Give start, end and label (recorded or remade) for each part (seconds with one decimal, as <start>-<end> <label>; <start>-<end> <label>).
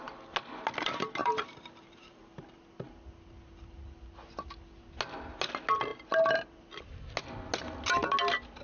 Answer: 0.0-1.2 recorded; 1.2-2.4 remade; 2.4-8.6 recorded